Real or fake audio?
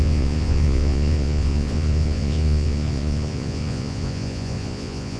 fake